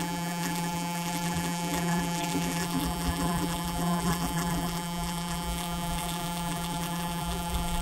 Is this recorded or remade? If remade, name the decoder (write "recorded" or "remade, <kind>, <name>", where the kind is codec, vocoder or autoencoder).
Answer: remade, vocoder, BigVGAN v2